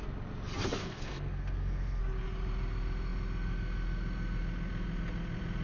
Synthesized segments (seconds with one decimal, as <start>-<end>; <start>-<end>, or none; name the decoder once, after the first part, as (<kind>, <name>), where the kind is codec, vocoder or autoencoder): 0.8-2.0 (codec, SNAC)